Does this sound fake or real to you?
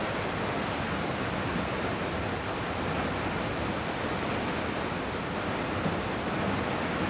real